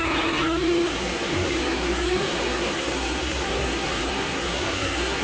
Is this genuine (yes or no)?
no